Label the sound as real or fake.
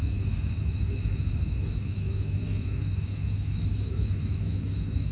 fake